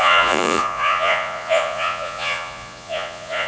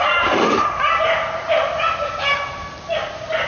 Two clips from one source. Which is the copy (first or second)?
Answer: first